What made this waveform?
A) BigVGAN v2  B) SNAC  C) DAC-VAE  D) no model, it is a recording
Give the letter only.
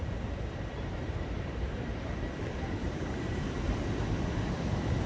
A